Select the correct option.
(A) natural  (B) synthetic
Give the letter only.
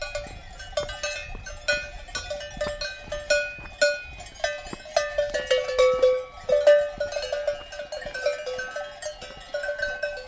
A